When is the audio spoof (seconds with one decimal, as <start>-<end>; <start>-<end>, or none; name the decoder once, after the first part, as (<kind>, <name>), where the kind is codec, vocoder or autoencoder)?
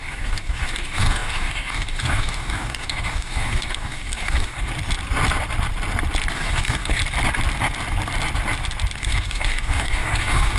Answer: 0.0-4.7 (codec, DAC); 6.3-7.0; 9.0-10.6